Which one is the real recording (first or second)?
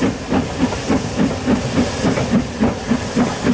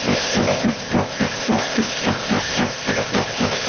first